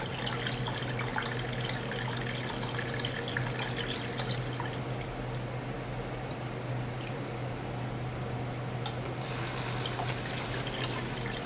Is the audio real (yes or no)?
yes